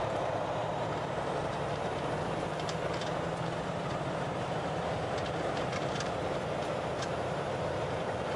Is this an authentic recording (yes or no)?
no